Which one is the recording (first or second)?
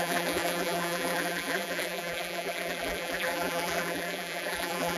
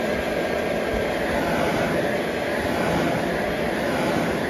second